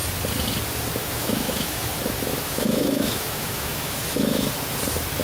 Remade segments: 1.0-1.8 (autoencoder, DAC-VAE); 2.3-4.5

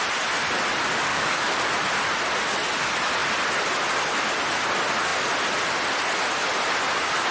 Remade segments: 1.1-1.7 (codec, DAC)